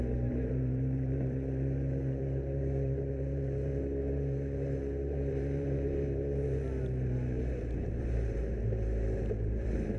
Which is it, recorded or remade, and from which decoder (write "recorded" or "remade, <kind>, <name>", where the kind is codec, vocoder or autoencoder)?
remade, vocoder, BigVGAN v2